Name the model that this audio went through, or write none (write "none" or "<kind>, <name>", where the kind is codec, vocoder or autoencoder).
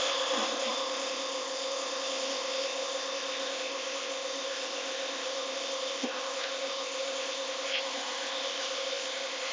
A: codec, ZipCodec